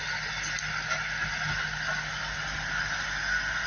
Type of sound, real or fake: real